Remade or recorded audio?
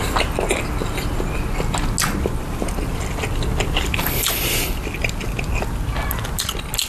recorded